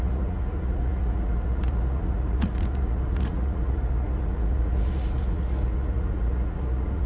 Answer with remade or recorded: remade